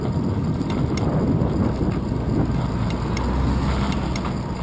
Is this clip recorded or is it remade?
recorded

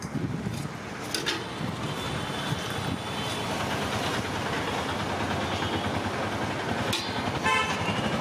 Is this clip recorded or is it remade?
recorded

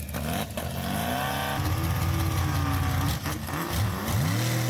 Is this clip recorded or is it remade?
recorded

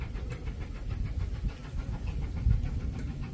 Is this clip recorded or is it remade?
recorded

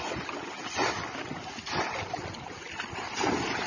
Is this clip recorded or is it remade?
recorded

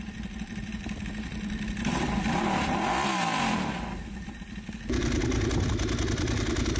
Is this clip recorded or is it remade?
remade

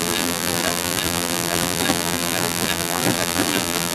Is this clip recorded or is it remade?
remade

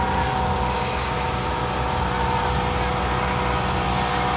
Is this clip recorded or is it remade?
recorded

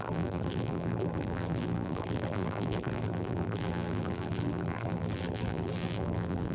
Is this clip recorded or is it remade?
remade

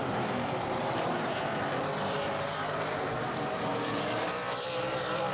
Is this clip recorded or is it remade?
remade